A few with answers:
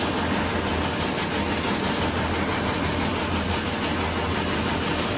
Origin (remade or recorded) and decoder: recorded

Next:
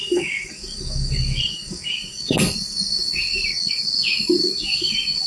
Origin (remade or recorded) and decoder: remade, codec, DAC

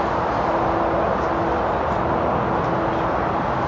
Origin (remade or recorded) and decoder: recorded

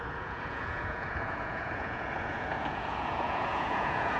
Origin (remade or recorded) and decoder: remade, vocoder, Vocos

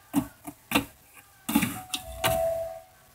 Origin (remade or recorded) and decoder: recorded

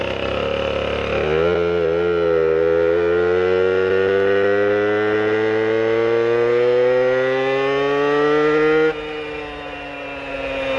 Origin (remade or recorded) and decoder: recorded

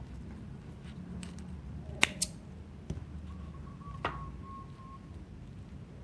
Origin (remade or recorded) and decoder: recorded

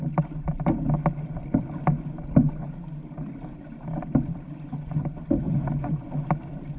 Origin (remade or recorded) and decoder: recorded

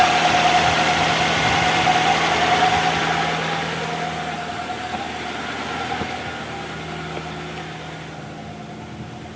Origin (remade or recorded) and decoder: recorded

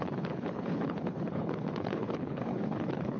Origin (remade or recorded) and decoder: remade, codec, HILCodec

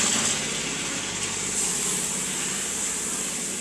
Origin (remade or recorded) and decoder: recorded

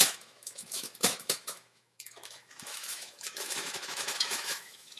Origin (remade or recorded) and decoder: remade, autoencoder, DAC-VAE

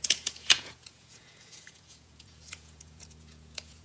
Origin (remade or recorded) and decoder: remade, vocoder, Vocos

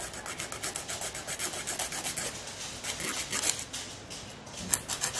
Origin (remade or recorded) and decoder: recorded